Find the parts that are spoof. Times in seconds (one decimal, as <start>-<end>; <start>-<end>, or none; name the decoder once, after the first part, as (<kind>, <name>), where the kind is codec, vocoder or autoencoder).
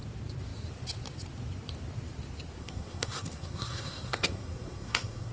2.6-5.3 (codec, SNAC)